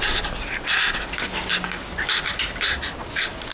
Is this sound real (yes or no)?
yes